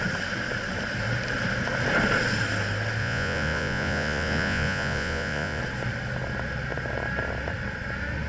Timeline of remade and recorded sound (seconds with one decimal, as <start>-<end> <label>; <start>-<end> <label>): 0.0-3.0 recorded; 3.0-5.6 remade; 5.6-8.3 recorded